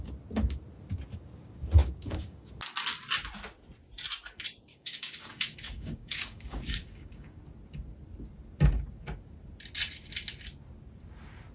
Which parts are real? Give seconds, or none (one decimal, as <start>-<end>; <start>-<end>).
0.0-1.8; 2.5-4.7; 7.4-11.5